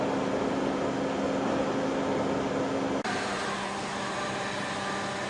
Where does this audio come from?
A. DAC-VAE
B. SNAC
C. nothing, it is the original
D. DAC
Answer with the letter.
C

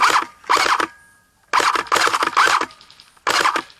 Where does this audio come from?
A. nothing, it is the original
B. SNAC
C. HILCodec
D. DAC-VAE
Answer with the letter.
A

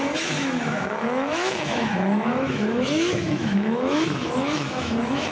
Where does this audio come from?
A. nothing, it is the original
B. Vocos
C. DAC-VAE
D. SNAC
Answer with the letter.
C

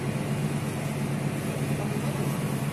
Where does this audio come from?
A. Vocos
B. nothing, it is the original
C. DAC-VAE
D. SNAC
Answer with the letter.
B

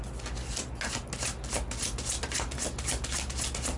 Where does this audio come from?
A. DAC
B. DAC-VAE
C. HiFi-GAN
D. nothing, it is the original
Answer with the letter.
D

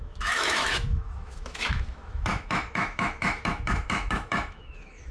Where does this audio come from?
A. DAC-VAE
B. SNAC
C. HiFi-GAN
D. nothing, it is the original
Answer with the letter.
A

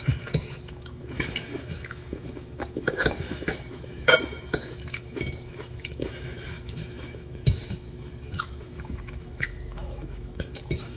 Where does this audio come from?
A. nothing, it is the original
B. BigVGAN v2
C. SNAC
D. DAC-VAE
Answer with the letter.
D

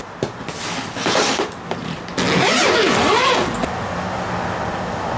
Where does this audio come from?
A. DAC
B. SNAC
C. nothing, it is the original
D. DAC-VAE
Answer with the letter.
C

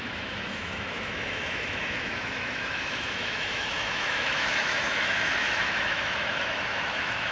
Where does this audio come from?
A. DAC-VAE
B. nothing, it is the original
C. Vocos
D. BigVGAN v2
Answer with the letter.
A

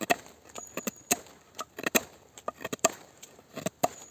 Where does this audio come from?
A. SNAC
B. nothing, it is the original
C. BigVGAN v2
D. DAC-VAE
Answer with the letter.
B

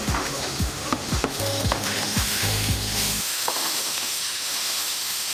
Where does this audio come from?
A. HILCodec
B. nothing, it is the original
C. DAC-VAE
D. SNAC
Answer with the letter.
C